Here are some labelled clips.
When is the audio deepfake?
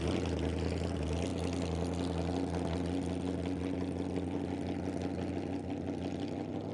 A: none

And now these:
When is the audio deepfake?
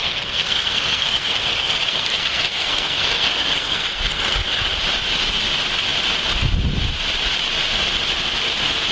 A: 0.0-4.7 (codec, SNAC)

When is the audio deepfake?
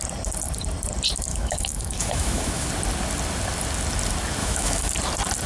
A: 1.3-2.7 (autoencoder, DAC-VAE); 4.4-4.9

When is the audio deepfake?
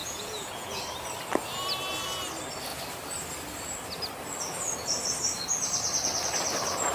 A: 0.0-0.8 (vocoder, Vocos)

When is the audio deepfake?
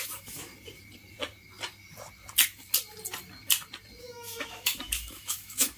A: 0.0-0.5 (autoencoder, DAC-VAE); 4.0-5.8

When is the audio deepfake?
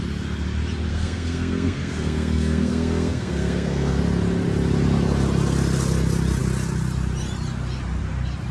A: 0.9-4.0 (codec, SNAC)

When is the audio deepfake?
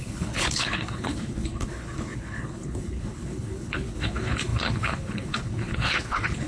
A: 0.0-6.5 (codec, HILCodec)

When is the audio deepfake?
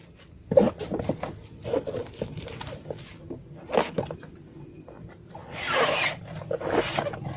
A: none